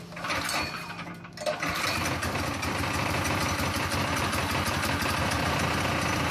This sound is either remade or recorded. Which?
recorded